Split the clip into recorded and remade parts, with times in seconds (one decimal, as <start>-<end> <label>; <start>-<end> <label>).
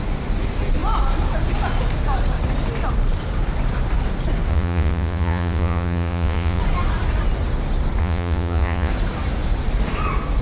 0.0-4.5 recorded; 4.5-6.6 remade; 6.6-8.0 recorded; 8.0-8.9 remade; 8.9-10.4 recorded